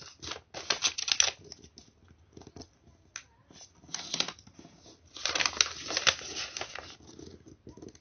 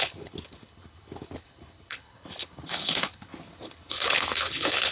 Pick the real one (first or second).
first